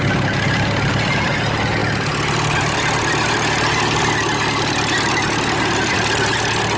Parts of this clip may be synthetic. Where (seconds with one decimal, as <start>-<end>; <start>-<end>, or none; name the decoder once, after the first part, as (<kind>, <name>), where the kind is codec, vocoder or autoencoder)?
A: none